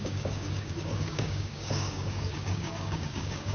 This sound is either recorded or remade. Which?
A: remade